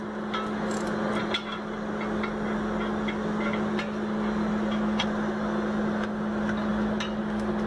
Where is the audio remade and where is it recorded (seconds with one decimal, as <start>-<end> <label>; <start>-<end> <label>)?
0.0-7.7 recorded